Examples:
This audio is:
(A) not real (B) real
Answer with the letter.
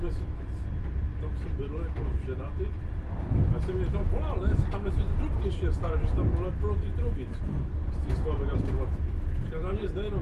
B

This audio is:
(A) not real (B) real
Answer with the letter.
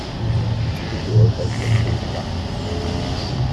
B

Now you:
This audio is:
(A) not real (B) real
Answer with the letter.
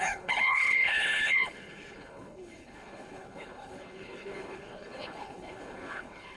A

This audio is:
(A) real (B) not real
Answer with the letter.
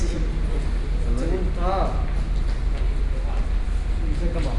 A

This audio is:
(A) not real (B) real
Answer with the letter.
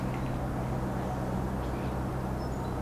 B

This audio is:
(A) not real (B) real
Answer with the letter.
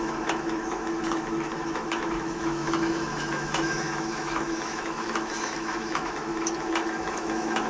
A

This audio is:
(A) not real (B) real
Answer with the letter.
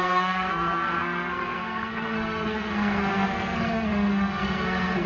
A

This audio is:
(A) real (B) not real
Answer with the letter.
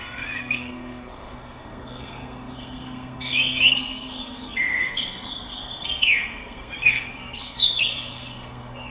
B